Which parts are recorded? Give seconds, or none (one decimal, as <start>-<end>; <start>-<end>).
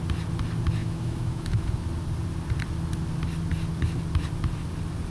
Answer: 0.0-0.8; 1.7-5.1